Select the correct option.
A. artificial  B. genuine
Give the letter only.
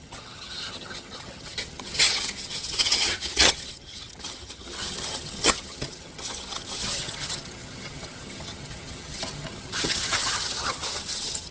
A